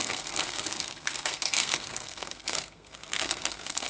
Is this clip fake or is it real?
fake